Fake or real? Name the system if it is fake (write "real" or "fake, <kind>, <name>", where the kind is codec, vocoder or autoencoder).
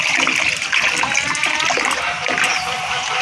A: real